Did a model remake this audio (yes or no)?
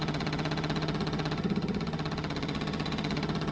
yes